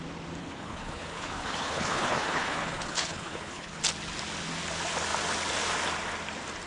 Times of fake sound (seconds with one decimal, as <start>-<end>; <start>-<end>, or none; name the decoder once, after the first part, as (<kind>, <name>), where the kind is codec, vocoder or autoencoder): 0.4-3.8 (codec, HILCodec)